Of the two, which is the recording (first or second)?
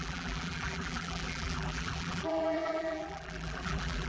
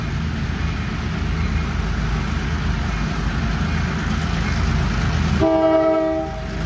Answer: second